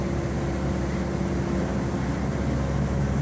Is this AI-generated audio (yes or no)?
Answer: no